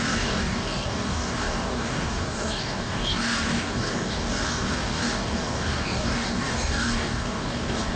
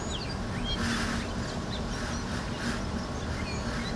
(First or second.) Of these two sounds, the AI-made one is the first